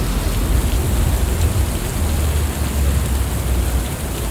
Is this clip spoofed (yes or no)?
no